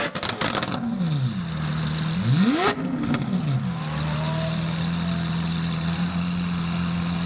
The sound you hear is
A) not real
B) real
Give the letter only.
B